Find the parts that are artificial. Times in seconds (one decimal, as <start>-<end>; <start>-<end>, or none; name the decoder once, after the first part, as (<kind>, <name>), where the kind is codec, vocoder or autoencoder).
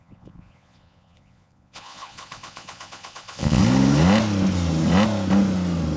0.0-3.6 (vocoder, Vocos)